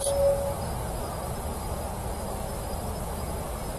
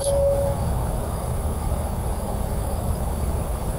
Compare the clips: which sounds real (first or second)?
first